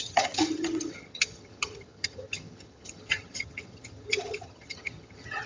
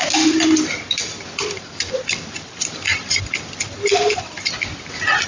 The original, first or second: second